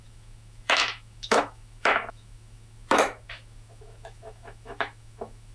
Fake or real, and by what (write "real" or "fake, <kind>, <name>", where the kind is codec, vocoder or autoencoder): fake, autoencoder, DAC-VAE